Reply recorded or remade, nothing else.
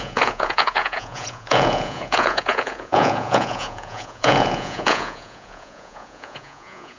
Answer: remade